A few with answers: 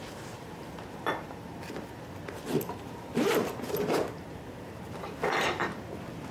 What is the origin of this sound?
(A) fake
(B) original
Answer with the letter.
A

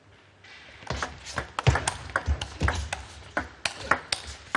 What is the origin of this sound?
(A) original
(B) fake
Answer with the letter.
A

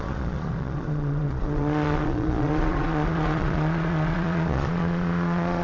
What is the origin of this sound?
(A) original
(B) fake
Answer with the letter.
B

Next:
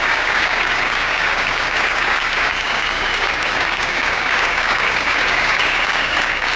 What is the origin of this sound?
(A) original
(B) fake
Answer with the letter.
B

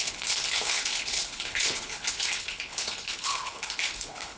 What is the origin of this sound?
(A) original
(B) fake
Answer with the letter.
B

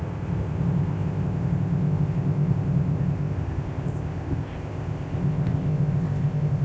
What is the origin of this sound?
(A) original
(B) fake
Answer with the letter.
B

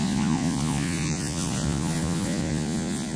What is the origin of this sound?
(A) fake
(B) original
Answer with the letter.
A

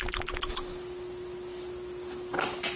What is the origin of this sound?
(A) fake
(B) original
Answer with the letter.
B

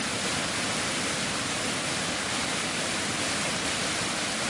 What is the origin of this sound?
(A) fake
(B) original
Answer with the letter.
A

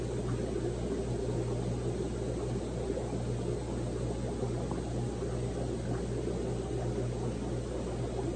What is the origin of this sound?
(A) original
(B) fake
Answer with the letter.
A